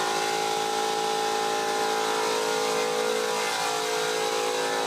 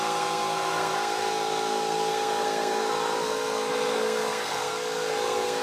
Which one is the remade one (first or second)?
second